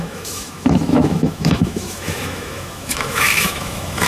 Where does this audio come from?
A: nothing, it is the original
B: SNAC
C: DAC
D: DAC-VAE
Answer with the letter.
D